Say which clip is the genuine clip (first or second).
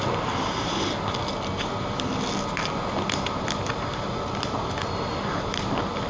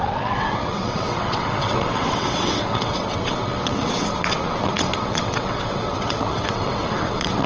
first